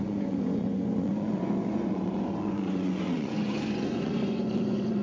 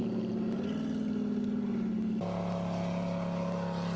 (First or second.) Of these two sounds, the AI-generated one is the first